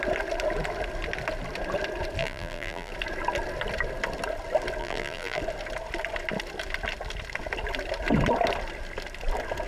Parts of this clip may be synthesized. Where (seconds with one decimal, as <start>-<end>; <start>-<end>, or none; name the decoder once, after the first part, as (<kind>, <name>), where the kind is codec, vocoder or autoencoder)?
2.2-2.9 (vocoder, BigVGAN v2); 4.8-5.4